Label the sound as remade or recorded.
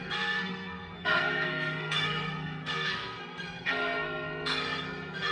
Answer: remade